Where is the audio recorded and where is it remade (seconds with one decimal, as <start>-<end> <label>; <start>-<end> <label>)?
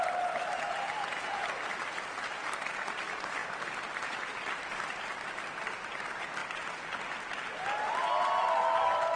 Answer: 0.0-3.4 recorded; 3.4-4.2 remade; 4.2-6.4 recorded; 6.4-7.6 remade; 7.6-9.2 recorded